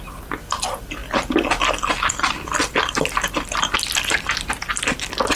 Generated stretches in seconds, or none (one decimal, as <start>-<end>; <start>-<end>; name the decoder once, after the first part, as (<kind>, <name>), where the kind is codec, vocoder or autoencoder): none